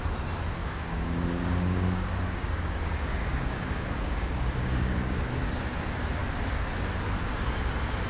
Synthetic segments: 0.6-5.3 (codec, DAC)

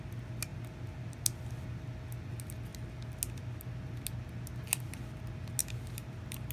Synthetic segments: 5.6-6.5 (vocoder, BigVGAN v2)

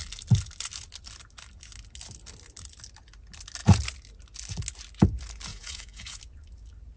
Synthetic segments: 5.5-6.2 (vocoder, Vocos)